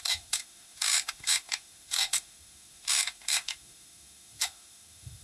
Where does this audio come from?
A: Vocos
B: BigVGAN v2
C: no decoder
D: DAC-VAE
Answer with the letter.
D